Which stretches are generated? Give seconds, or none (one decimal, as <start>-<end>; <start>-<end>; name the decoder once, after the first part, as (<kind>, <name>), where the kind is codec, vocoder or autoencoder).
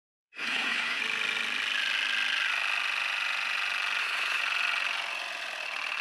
0.0-1.0 (codec, SNAC); 4.0-4.4